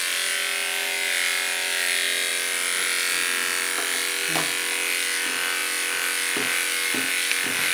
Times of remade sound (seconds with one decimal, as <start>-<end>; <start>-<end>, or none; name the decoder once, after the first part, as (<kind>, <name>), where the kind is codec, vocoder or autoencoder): none

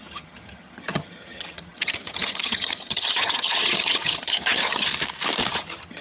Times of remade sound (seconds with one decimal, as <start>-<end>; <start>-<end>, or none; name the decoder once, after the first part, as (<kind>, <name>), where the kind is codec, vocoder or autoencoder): 0.0-4.9 (vocoder, HiFi-GAN); 5.5-6.0

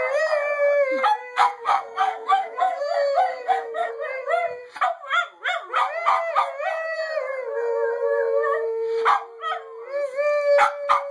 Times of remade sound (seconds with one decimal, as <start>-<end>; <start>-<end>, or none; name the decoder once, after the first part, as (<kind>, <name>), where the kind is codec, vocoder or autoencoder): 1.2-2.8 (codec, SNAC); 3.3-3.9

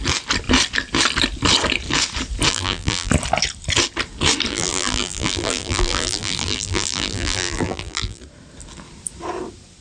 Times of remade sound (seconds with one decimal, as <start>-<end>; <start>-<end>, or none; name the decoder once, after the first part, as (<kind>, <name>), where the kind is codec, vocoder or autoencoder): 2.5-3.1 (vocoder, BigVGAN v2); 4.5-8.2

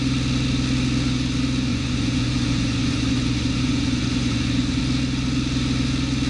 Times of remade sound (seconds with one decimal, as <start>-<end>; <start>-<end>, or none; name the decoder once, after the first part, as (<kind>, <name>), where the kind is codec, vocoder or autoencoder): 1.7-4.8 (vocoder, Vocos)

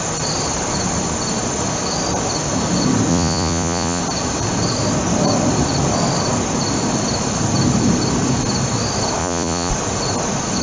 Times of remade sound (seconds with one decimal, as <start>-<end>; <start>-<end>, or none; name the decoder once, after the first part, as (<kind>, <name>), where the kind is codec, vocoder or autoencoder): 3.1-4.0 (vocoder, Vocos); 9.2-9.7